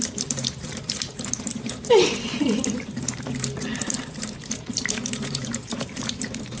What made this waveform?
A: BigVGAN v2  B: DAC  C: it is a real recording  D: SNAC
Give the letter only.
A